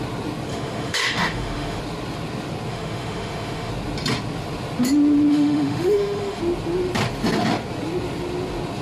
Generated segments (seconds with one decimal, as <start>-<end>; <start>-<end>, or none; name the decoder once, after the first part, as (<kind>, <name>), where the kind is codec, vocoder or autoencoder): 0.5-1.8 (autoencoder, DAC-VAE); 2.7-3.7; 5.3-6.4